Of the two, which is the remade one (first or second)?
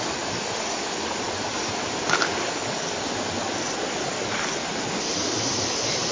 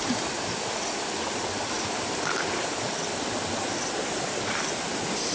second